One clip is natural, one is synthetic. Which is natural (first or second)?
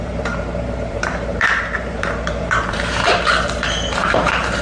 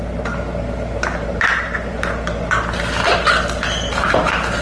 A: second